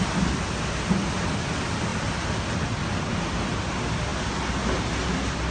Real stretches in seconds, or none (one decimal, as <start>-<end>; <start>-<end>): 0.0-5.5

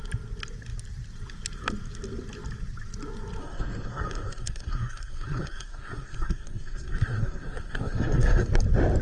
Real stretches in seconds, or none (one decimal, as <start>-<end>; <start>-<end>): 0.0-3.4; 8.5-9.0

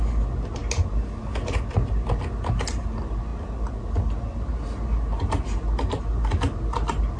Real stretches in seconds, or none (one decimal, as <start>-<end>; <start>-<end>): 0.0-7.2

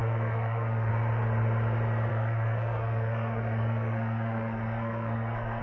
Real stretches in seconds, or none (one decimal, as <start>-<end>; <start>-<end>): 0.9-2.1

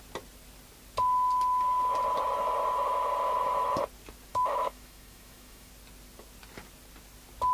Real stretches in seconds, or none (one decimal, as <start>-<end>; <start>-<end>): 0.0-4.3; 5.7-7.5

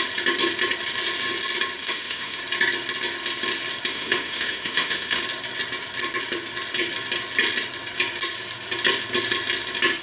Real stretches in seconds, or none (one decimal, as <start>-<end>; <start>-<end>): 0.0-1.8; 2.4-3.9; 5.2-10.0